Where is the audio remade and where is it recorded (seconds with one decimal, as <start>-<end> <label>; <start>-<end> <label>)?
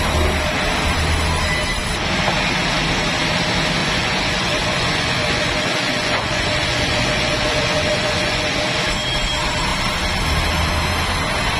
0.0-3.8 recorded; 3.8-8.6 remade; 8.6-11.6 recorded